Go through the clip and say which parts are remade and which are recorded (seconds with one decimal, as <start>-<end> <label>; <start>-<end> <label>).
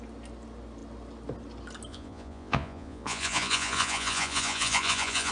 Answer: 0.0-1.9 recorded; 1.9-5.3 remade